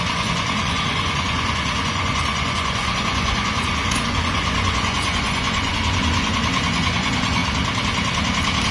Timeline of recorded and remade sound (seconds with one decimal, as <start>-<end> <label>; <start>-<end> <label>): 0.0-7.4 remade; 7.4-8.7 recorded